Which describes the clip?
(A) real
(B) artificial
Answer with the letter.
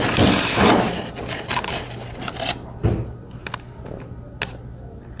A